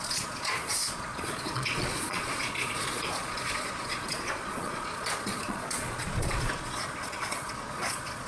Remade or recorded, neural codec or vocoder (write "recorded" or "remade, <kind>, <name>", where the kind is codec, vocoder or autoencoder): remade, vocoder, Vocos